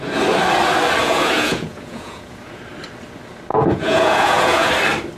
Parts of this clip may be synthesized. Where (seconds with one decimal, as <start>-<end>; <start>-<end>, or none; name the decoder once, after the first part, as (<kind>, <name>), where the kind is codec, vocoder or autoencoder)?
1.0-2.6 (vocoder, Vocos); 3.5-4.7